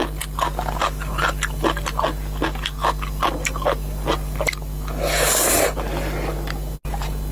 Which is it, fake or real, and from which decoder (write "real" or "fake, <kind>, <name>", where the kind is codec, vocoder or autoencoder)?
real